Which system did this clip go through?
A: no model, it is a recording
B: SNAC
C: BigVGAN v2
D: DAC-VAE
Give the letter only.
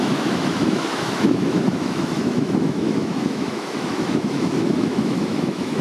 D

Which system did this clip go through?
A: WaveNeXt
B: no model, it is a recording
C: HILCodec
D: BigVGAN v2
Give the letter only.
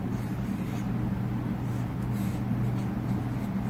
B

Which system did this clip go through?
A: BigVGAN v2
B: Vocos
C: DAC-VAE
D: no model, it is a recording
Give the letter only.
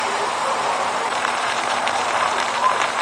A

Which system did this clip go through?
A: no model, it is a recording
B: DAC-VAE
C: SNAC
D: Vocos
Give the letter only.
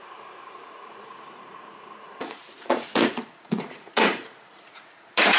D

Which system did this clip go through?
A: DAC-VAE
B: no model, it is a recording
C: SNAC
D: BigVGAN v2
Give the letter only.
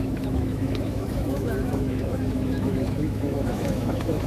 A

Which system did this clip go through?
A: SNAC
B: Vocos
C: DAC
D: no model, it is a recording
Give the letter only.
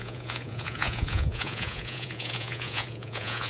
B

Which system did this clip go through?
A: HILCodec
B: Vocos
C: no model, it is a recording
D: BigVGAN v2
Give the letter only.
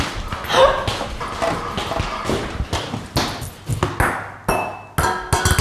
C